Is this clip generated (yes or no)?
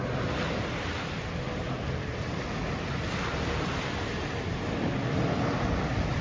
no